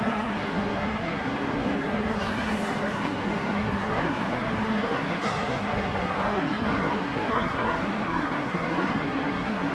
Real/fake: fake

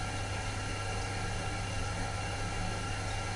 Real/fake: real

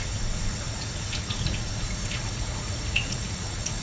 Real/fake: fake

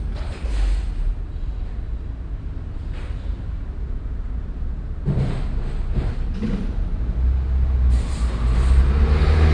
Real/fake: real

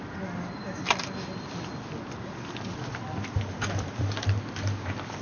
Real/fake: real